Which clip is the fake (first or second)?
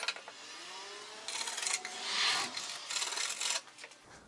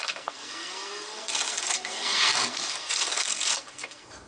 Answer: second